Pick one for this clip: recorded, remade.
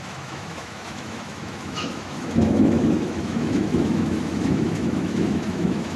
remade